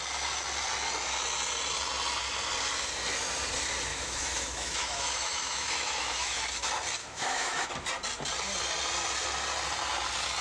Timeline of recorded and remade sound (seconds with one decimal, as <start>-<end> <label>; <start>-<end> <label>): 0.0-3.9 recorded; 3.9-6.4 remade; 6.4-7.0 recorded; 7.0-7.7 remade; 7.7-10.4 recorded